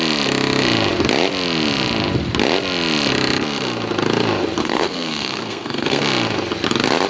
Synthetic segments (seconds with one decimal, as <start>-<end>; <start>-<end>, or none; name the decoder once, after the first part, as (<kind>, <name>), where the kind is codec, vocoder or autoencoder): 4.6-6.0 (codec, SNAC)